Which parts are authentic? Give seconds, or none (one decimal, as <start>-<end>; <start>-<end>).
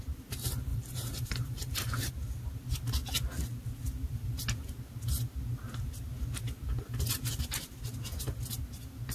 0.0-0.7; 2.1-9.1